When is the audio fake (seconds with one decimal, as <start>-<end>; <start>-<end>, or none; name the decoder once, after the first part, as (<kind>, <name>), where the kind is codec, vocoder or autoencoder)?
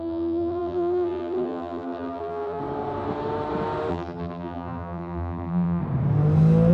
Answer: 0.0-2.6 (vocoder, BigVGAN v2); 3.9-5.8